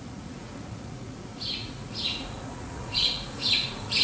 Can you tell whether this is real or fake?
fake